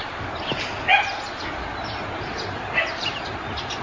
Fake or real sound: real